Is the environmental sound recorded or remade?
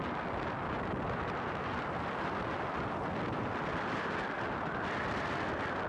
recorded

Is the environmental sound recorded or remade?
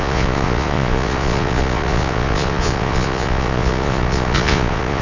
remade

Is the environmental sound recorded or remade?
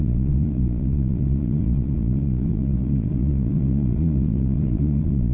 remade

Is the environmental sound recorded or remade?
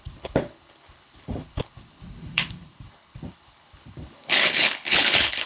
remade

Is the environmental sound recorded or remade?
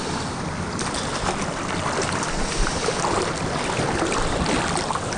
recorded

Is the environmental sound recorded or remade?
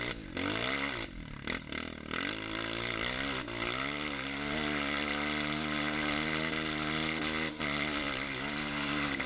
recorded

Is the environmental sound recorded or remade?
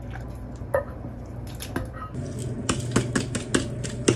recorded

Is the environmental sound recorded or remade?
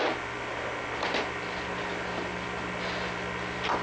recorded